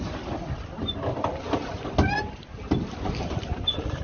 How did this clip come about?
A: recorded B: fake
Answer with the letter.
A